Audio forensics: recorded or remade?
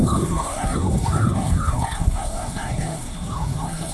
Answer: remade